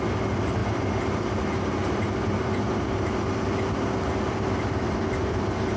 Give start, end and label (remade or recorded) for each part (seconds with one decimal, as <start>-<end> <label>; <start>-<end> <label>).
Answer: 0.0-5.8 recorded